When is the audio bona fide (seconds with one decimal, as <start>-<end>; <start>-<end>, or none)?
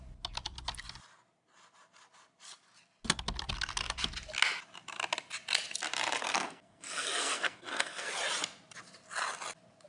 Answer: 0.0-6.2; 8.1-9.9